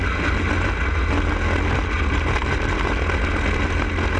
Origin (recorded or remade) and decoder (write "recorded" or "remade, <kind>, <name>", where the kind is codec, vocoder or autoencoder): recorded